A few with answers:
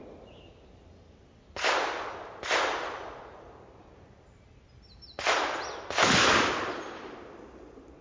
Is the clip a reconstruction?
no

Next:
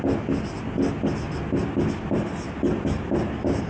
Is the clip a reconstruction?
no